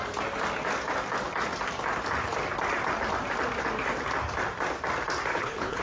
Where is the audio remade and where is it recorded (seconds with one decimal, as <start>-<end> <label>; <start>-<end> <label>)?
0.0-5.3 recorded; 5.3-5.8 remade